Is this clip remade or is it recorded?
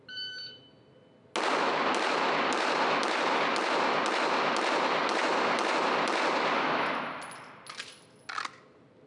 recorded